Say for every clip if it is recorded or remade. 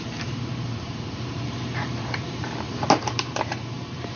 remade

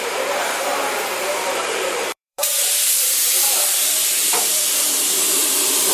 remade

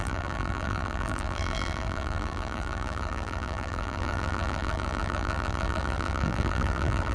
remade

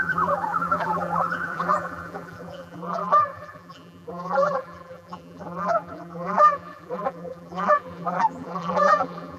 remade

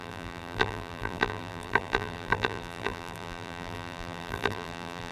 remade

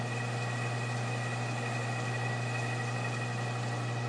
recorded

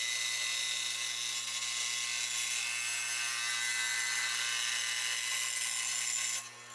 recorded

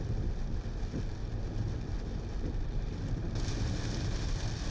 remade